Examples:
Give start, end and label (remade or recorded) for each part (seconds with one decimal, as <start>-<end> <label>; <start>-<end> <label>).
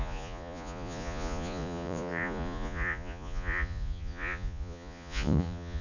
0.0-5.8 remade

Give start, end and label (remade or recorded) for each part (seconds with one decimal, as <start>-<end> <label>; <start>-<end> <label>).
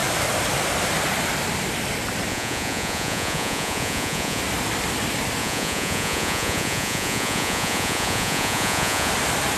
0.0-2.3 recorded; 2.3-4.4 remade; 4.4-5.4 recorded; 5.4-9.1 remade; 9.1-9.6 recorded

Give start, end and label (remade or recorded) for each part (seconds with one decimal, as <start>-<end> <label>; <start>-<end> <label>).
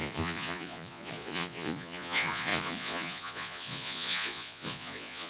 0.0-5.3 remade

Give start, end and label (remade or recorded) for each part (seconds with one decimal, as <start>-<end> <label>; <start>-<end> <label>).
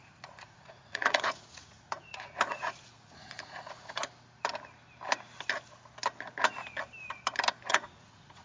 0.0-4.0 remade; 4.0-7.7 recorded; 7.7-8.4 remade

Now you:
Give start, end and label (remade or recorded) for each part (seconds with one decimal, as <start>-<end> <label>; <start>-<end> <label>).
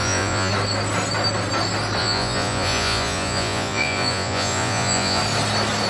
0.0-0.5 remade; 0.5-2.0 recorded; 2.0-5.2 remade; 5.2-5.9 recorded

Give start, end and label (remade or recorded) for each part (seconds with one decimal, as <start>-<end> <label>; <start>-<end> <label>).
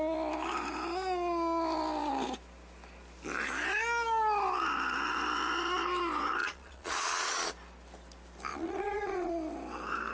0.0-6.4 recorded; 6.4-7.5 remade; 7.5-8.5 recorded; 8.5-9.3 remade; 9.3-10.1 recorded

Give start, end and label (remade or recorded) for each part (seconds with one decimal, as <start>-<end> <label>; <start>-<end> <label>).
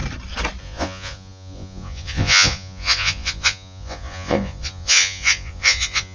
0.0-0.6 recorded; 0.6-6.1 remade